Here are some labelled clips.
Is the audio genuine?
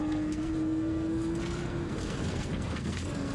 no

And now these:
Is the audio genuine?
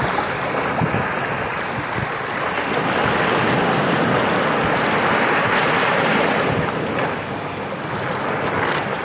yes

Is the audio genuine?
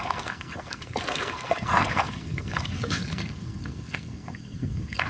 no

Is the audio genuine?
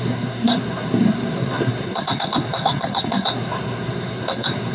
no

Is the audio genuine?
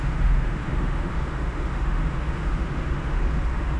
no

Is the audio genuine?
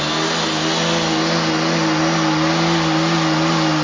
yes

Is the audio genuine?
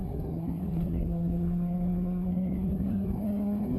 no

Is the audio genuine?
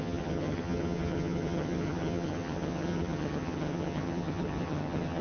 no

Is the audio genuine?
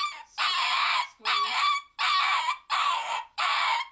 yes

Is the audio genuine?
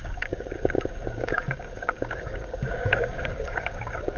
no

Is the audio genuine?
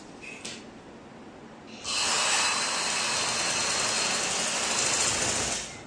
yes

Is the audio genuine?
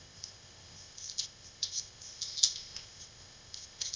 no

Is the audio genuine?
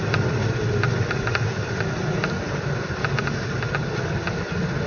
yes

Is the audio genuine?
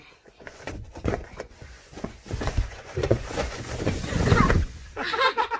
no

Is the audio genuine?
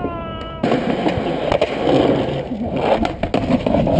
yes